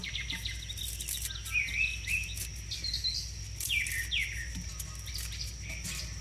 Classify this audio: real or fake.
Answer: real